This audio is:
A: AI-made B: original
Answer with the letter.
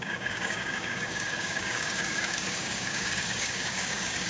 A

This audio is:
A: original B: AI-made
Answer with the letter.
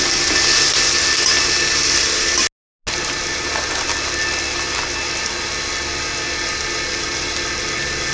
A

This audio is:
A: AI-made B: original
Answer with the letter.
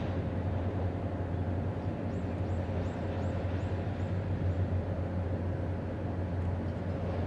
B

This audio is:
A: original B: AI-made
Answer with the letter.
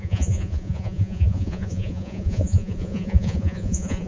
B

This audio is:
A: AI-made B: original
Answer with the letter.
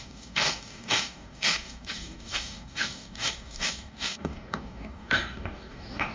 A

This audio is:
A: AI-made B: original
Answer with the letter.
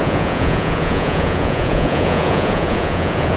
A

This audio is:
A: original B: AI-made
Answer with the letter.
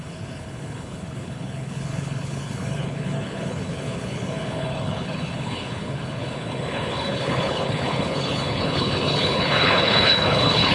B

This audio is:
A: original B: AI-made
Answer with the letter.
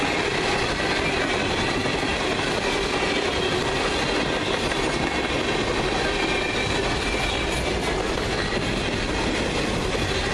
A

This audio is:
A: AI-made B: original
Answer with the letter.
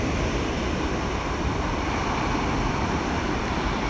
B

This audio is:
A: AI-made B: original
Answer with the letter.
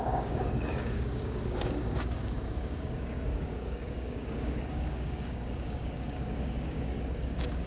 A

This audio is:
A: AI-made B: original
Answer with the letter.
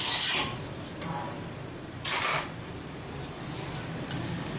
B